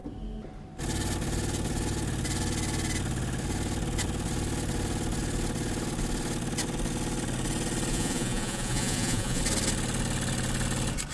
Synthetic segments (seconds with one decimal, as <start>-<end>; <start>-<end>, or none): 7.9-9.4